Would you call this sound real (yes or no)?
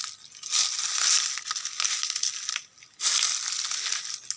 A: yes